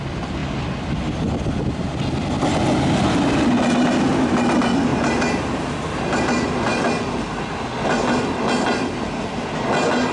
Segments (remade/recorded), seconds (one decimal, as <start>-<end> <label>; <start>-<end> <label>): 0.0-10.1 recorded